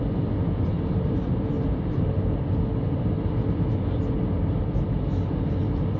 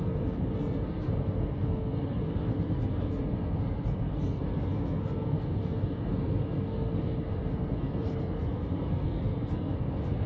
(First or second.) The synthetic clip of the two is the second